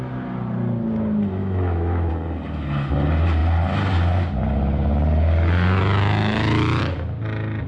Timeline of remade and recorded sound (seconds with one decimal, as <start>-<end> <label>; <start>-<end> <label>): 0.0-1.4 recorded; 1.4-2.1 remade; 2.1-6.2 recorded; 6.2-6.8 remade; 6.8-7.7 recorded